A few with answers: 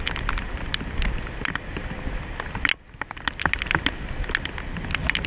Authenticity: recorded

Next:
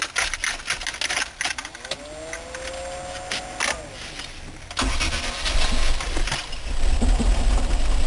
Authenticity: recorded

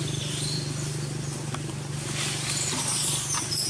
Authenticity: recorded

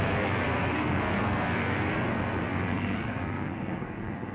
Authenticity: remade